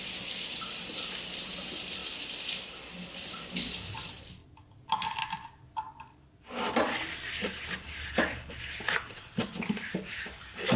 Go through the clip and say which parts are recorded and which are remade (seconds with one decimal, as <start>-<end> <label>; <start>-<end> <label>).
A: 0.0-2.0 remade; 2.0-3.2 recorded; 3.2-4.4 remade; 4.4-9.1 recorded; 9.1-10.8 remade